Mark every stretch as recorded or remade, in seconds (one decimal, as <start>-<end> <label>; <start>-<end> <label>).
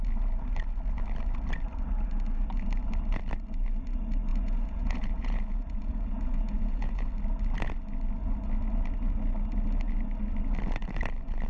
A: 0.0-4.3 recorded; 4.3-7.1 remade; 7.1-11.5 recorded